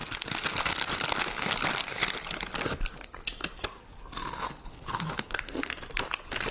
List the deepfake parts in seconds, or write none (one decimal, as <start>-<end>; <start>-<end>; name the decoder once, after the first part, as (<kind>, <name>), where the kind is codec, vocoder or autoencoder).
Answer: 4.4-5.5 (codec, HILCodec)